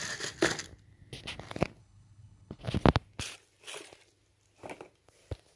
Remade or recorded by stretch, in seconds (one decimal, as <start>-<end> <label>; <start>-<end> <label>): 0.0-1.8 recorded; 1.8-2.6 remade; 2.6-5.6 recorded

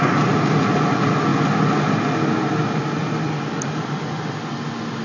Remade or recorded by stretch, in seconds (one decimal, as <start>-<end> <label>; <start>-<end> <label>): 0.0-5.0 recorded

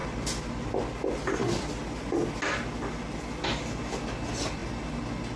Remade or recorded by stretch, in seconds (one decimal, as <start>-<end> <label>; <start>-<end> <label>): 0.0-5.4 recorded

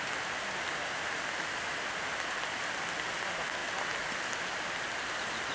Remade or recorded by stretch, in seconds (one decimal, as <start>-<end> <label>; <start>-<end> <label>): 0.0-5.5 recorded

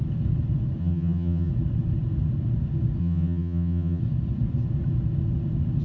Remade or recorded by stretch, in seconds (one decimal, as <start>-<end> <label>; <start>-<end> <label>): 0.0-0.8 recorded; 0.8-1.5 remade; 1.5-3.0 recorded; 3.0-4.0 remade; 4.0-5.8 recorded

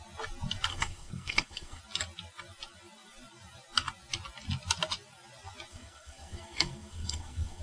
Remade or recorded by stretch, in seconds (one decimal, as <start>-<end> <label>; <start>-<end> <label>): 0.0-0.7 recorded; 0.7-1.8 remade; 1.8-5.7 recorded; 5.7-7.6 remade